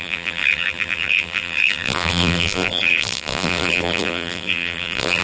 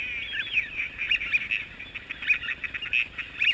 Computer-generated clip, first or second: first